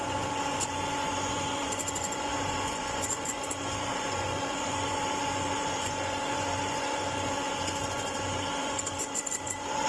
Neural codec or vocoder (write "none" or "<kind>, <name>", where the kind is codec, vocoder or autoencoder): vocoder, Vocos